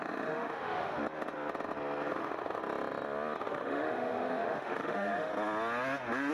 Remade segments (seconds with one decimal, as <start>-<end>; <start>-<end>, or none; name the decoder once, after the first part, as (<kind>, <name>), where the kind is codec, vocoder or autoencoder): 0.0-1.0 (autoencoder, DAC-VAE); 2.1-2.6; 3.4-5.3